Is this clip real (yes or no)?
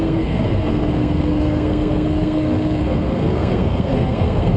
no